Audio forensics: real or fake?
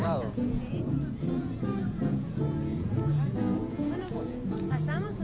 fake